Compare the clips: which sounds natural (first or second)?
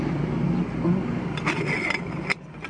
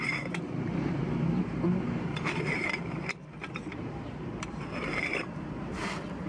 first